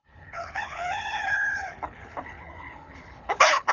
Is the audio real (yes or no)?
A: no